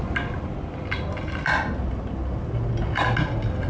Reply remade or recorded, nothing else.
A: recorded